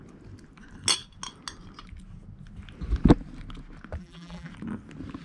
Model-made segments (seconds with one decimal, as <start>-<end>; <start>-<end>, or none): 4.0-4.5